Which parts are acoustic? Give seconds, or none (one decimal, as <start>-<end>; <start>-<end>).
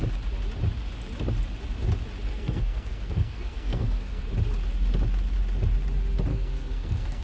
0.0-2.3; 4.3-6.3